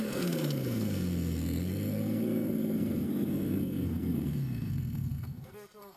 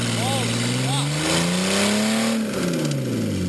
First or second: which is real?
second